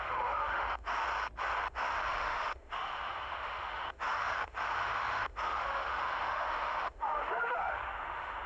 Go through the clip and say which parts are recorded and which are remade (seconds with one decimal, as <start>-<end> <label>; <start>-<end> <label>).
0.0-1.0 remade; 1.0-1.7 recorded; 1.7-8.5 remade